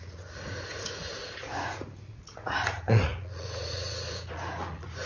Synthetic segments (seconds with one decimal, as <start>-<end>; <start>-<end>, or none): 0.0-5.1